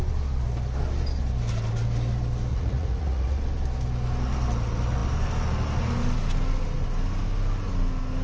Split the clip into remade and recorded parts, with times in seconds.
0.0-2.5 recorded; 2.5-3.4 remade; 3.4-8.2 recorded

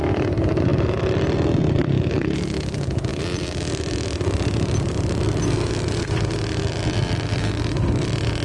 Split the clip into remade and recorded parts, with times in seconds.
0.0-8.4 recorded

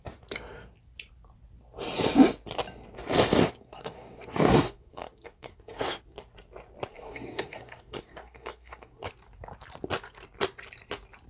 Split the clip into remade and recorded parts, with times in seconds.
0.0-3.4 recorded; 3.4-6.0 remade; 6.0-6.9 recorded; 6.9-9.1 remade; 9.1-11.3 recorded

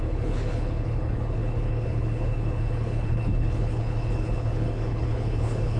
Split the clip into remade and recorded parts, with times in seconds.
0.0-5.8 remade

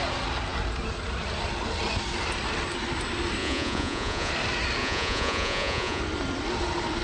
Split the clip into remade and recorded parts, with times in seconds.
0.0-3.4 recorded; 3.4-4.3 remade; 4.3-4.8 recorded; 4.8-6.0 remade; 6.0-7.0 recorded

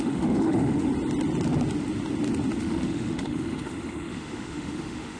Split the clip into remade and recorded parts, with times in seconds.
0.0-0.9 remade; 0.9-2.6 recorded; 2.6-5.2 remade